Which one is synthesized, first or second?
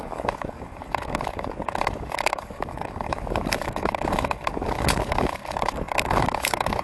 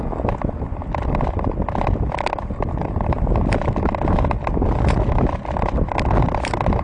first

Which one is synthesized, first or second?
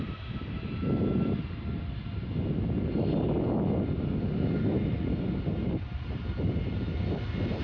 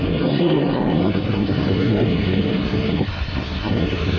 second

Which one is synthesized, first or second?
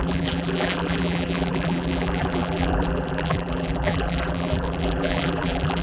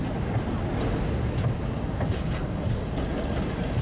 first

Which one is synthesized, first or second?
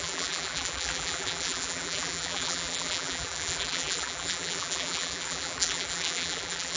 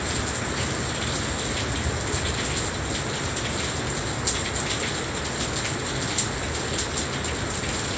first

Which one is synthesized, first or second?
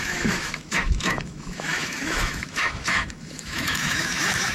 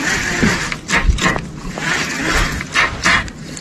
first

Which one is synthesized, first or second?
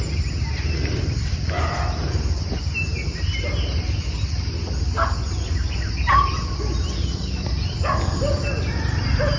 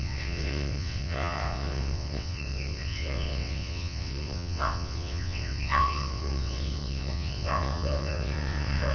second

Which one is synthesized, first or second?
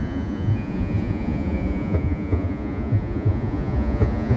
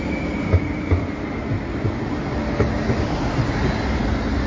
first